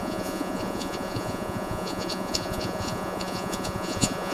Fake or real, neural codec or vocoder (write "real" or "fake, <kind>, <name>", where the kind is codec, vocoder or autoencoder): fake, vocoder, Vocos